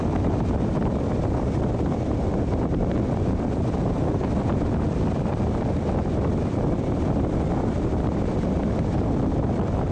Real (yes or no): no